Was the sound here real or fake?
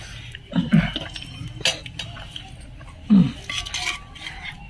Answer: real